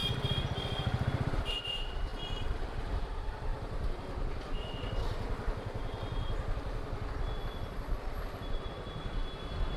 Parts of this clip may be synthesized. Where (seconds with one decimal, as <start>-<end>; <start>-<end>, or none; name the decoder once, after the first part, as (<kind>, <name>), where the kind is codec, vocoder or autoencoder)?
0.0-1.6 (vocoder, BigVGAN v2); 2.1-2.6; 3.5-8.4